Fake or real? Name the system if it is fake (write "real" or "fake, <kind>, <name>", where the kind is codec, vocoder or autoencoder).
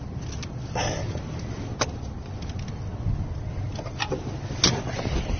real